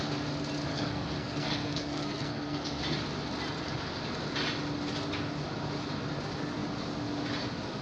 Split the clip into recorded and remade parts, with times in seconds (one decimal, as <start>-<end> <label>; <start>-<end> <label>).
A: 0.0-0.7 recorded; 0.7-2.8 remade; 2.8-7.8 recorded